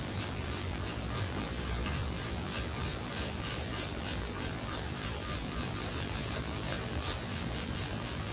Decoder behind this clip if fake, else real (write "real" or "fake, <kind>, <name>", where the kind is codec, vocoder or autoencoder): fake, vocoder, BigVGAN v2